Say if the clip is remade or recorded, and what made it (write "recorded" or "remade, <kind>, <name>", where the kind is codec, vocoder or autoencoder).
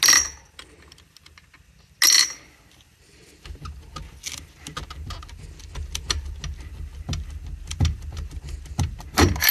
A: recorded